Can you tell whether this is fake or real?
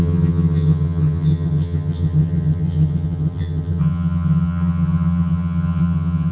fake